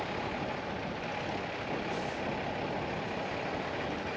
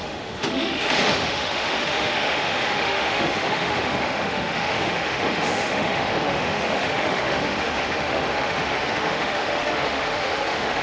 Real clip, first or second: first